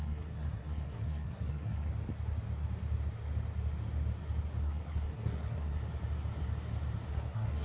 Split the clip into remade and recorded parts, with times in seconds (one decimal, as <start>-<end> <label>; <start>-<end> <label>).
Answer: 0.0-1.9 remade; 1.9-4.6 recorded; 4.6-5.8 remade; 5.8-7.1 recorded; 7.1-7.6 remade